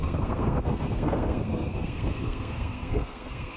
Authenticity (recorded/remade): remade